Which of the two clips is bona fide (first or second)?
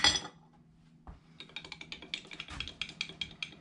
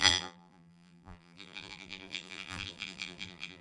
first